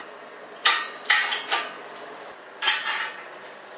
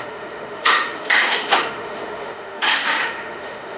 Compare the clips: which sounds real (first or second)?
first